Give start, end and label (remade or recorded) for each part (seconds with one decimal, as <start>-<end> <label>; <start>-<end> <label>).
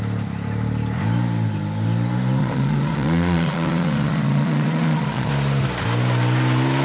0.0-2.4 recorded; 2.4-5.3 remade; 5.3-6.8 recorded